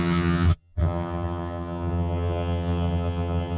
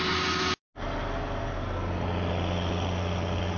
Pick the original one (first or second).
second